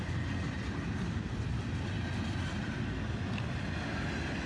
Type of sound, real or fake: real